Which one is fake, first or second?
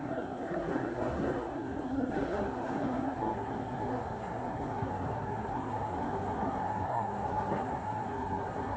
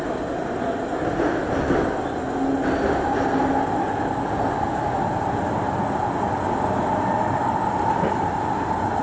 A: first